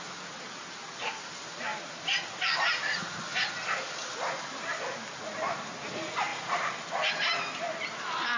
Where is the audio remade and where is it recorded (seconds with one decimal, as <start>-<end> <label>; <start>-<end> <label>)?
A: 0.0-8.4 recorded